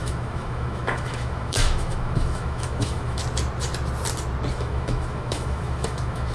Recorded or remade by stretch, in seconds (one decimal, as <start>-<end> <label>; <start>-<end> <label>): 0.0-3.2 remade; 3.2-4.5 recorded; 4.5-6.3 remade